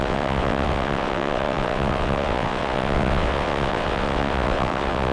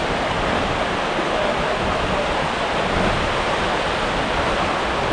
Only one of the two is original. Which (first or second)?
second